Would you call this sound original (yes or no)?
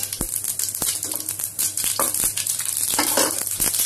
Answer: yes